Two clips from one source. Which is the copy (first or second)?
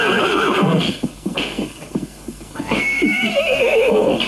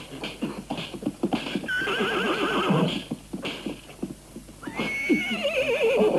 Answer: first